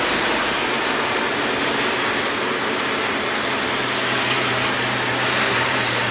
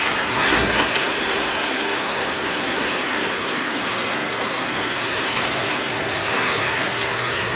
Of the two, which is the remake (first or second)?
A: second